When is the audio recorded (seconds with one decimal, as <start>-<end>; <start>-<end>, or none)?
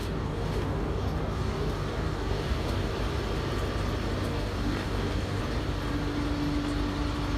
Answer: 2.9-4.3; 5.4-7.4